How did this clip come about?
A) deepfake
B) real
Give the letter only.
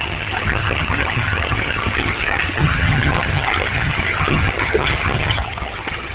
A